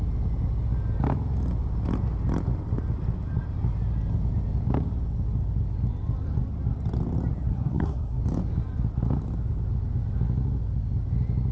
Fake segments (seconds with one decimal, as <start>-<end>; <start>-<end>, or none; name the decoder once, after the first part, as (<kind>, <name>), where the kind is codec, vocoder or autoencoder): 7.5-8.2 (codec, SNAC)

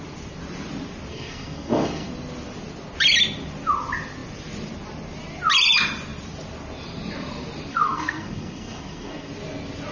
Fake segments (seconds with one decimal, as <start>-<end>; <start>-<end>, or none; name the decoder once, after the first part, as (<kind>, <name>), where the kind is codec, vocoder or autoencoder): 1.1-2.1 (codec, SNAC); 7.7-9.3

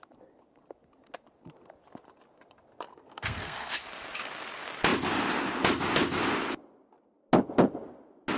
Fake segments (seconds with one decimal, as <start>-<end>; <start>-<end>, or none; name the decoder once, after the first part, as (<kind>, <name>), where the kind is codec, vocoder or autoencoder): 2.9-3.7 (codec, SNAC)

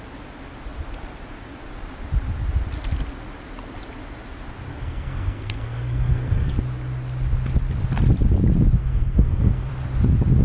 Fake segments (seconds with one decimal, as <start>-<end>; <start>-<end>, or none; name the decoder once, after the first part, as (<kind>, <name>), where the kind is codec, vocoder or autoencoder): 4.7-6.6 (codec, SNAC); 8.8-9.7